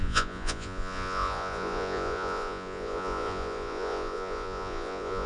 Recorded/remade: remade